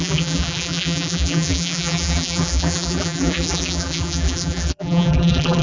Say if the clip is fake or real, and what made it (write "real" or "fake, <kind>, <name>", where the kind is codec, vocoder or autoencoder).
fake, vocoder, BigVGAN v2